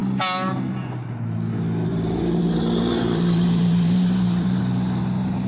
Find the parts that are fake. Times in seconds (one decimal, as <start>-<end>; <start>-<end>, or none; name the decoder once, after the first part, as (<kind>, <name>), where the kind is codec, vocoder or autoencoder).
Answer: 1.8-4.6 (vocoder, BigVGAN v2)